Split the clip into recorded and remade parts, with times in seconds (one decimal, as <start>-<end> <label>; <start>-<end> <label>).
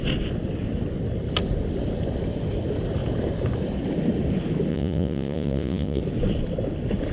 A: 0.0-4.7 recorded; 4.7-6.0 remade; 6.0-7.1 recorded